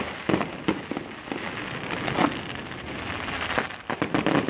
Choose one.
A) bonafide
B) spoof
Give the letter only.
A